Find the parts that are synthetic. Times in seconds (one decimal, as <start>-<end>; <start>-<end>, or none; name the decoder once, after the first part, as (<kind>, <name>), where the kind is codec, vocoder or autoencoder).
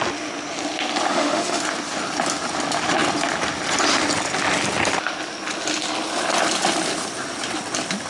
1.1-1.6 (autoencoder, DAC-VAE)